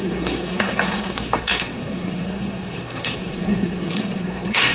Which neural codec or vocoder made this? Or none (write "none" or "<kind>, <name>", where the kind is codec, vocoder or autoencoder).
codec, SNAC